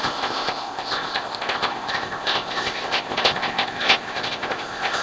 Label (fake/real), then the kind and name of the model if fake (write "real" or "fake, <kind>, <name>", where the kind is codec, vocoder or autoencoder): fake, codec, ZipCodec